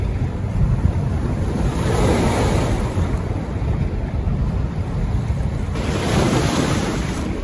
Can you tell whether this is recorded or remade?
remade